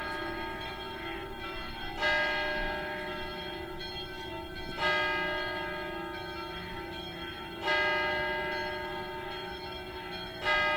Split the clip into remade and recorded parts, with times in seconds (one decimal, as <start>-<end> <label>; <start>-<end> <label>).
0.0-10.8 recorded